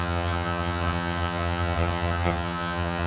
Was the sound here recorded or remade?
remade